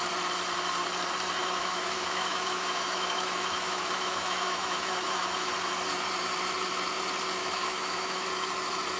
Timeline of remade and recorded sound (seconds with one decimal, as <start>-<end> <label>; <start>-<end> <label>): 0.0-1.4 recorded; 1.4-5.5 remade; 5.5-7.4 recorded; 7.4-8.3 remade; 8.3-9.0 recorded